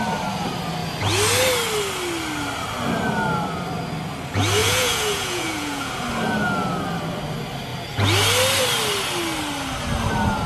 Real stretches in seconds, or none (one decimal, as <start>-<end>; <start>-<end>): 0.0-4.6; 5.9-10.5